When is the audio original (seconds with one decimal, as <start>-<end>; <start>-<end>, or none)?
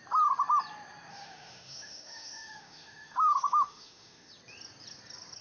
0.0-1.1; 4.3-5.4